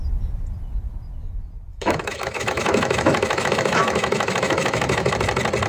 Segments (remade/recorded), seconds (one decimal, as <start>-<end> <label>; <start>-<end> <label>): 0.0-1.7 recorded; 1.7-5.1 remade; 5.1-5.7 recorded